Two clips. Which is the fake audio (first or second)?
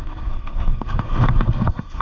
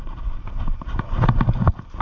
first